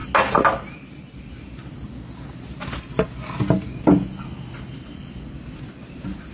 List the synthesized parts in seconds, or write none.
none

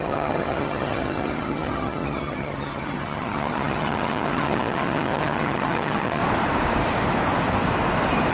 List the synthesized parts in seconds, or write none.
0.0-6.2 (vocoder, HiFi-GAN)